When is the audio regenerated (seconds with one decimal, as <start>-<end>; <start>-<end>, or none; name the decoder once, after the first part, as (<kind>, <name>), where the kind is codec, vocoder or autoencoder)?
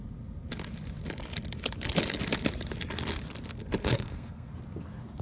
3.8-4.5 (codec, SNAC)